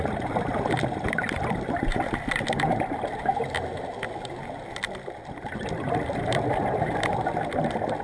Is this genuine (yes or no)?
yes